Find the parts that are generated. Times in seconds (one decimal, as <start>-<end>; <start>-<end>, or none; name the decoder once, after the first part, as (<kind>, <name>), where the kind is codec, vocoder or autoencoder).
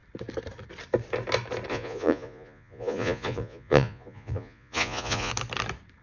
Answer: 1.7-5.3 (vocoder, Vocos)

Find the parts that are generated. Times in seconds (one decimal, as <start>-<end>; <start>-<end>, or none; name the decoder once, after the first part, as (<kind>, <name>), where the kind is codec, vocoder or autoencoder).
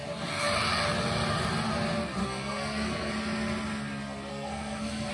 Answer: 2.2-3.1 (codec, SNAC); 4.3-5.1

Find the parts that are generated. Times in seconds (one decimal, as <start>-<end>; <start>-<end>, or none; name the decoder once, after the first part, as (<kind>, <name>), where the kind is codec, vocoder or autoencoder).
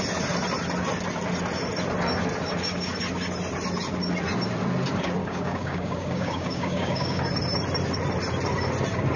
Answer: 5.2-7.2 (codec, DAC)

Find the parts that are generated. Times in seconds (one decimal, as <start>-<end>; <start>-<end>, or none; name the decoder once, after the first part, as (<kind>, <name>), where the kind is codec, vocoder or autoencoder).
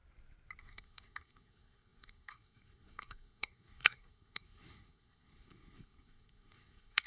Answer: 0.6-7.1 (codec, SNAC)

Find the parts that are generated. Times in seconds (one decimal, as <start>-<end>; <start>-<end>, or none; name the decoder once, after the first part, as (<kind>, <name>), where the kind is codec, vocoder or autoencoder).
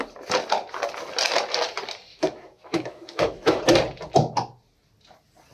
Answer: 2.1-3.6 (autoencoder, DAC-VAE)